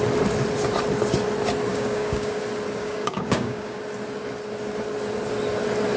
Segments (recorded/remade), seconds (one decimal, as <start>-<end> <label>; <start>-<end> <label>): 0.0-1.7 recorded; 1.7-2.4 remade; 2.4-2.8 recorded; 2.8-3.8 remade; 3.8-6.0 recorded